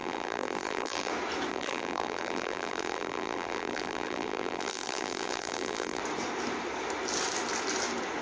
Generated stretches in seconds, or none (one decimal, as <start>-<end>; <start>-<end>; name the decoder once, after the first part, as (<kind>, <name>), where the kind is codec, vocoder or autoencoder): 0.0-1.1 (vocoder, BigVGAN v2); 1.5-6.0